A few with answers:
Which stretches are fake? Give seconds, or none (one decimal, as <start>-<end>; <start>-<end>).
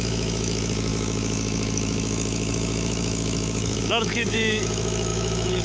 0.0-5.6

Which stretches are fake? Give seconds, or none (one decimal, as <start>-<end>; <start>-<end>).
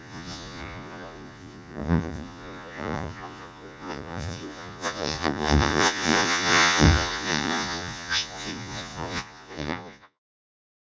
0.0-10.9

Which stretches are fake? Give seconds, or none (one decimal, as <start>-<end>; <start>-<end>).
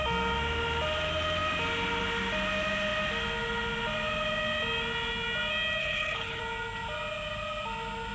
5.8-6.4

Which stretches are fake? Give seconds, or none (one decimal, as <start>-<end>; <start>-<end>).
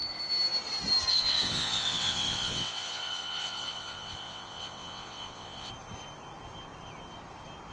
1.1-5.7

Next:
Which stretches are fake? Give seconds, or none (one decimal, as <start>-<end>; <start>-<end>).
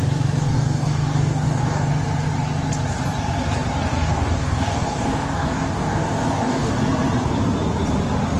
0.4-1.9; 3.9-6.8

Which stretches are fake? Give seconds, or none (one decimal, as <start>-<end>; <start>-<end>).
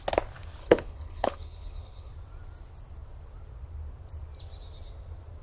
0.6-2.1